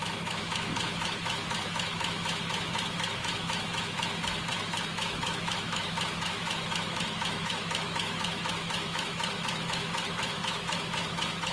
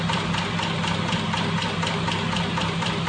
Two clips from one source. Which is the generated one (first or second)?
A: first